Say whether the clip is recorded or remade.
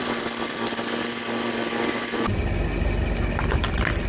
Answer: recorded